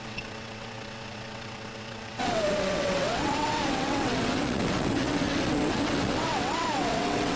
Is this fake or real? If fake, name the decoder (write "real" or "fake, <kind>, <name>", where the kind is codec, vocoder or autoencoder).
fake, vocoder, WaveNeXt